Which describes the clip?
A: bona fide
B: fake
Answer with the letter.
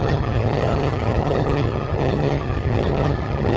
B